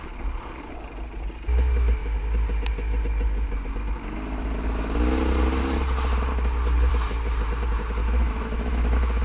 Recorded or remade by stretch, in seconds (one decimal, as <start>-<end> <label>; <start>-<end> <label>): 0.0-8.0 recorded; 8.0-9.2 remade